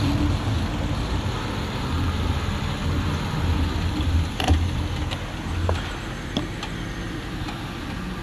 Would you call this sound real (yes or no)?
yes